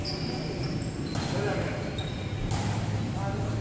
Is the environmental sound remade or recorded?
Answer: recorded